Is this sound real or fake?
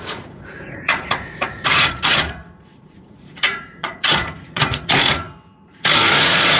fake